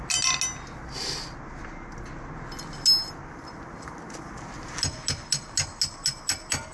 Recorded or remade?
recorded